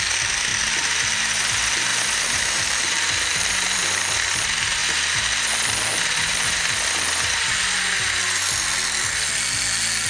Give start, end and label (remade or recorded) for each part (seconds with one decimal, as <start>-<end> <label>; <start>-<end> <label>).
0.0-1.9 recorded; 1.9-3.8 remade; 3.8-10.1 recorded